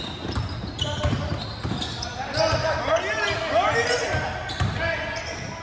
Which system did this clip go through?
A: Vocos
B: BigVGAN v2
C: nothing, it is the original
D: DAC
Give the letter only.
C